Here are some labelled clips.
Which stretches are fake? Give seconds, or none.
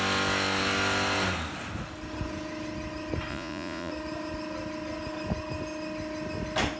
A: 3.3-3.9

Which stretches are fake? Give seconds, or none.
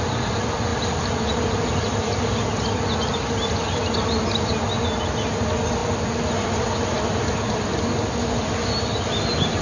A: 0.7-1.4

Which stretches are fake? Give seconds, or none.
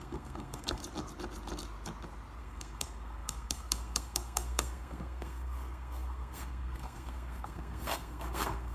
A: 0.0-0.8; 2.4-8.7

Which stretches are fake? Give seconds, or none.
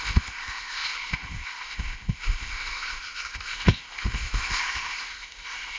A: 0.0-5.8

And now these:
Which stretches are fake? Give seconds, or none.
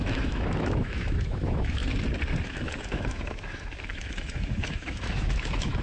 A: 0.0-1.8; 2.4-5.8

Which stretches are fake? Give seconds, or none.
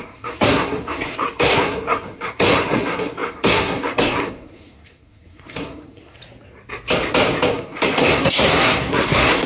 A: 0.0-6.2; 7.5-9.5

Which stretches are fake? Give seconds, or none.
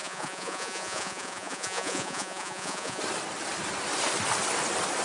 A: 0.0-3.0